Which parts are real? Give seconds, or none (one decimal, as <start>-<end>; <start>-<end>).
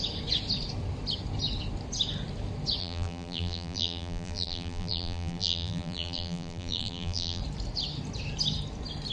0.0-2.8; 7.4-9.1